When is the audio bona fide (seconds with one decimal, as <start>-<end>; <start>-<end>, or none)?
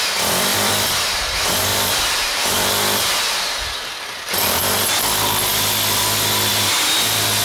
0.0-0.5; 1.1-1.7; 4.6-7.4